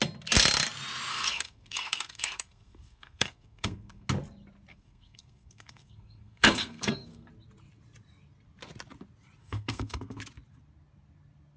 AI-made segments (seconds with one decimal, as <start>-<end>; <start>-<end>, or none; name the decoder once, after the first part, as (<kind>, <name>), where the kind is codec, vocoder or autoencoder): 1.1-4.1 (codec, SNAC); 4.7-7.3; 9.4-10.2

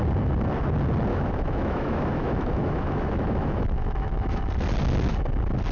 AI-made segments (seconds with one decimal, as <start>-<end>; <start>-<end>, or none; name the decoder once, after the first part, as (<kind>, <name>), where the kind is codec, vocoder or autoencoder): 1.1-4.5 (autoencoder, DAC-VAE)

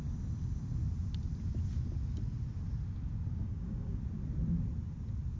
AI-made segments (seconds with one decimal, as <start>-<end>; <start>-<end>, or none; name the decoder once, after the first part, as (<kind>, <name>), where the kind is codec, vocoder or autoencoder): 3.4-4.0 (codec, DAC)